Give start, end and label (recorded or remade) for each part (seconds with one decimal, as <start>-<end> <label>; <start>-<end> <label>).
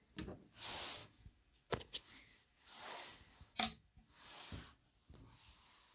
0.0-1.0 recorded; 1.0-4.5 remade; 4.5-5.9 recorded